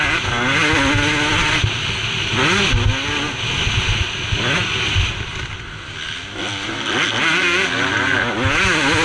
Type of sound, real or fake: real